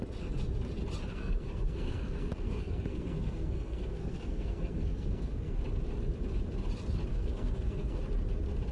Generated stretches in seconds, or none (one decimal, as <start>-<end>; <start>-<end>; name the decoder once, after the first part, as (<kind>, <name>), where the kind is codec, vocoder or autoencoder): 1.1-5.6 (codec, SNAC); 7.1-8.0